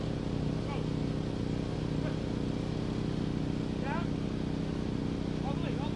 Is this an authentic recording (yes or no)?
yes